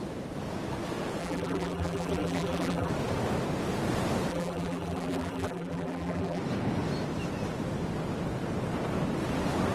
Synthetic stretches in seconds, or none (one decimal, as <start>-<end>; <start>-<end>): 1.2-2.9; 4.3-6.4